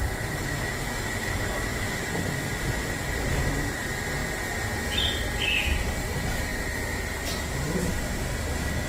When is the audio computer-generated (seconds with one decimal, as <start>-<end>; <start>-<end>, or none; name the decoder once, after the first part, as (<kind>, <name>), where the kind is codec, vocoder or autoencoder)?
1.7-3.4 (vocoder, BigVGAN v2)